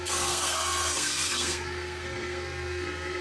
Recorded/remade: remade